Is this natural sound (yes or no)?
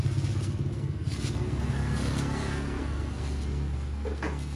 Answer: no